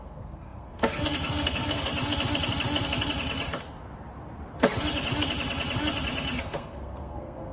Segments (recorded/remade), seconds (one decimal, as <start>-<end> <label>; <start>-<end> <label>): 0.0-1.9 remade; 1.9-6.4 recorded; 6.4-7.5 remade